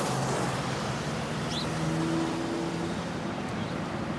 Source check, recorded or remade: recorded